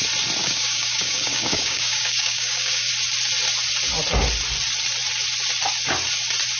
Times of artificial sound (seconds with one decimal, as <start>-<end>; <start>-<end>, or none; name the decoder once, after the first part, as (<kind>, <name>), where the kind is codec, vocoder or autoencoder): 0.4-2.9 (codec, DAC)